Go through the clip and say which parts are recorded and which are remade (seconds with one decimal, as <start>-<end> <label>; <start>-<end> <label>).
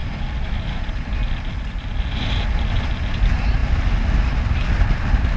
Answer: 0.0-5.4 recorded